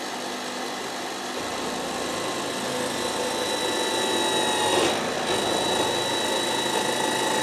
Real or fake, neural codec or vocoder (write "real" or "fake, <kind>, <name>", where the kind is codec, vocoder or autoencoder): real